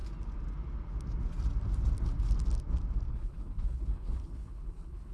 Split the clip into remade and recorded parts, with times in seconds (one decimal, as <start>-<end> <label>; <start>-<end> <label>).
0.0-3.1 recorded; 3.1-5.1 remade